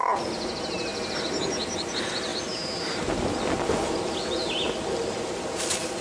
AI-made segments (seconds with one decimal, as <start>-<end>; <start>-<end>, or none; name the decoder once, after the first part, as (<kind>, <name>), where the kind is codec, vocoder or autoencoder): none